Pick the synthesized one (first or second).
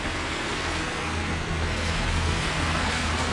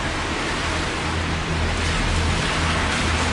first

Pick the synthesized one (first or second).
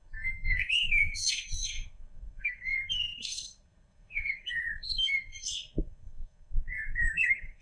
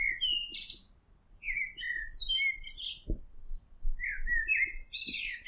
first